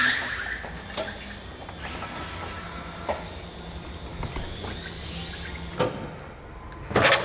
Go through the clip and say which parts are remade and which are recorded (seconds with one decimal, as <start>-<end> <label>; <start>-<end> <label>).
0.0-7.2 recorded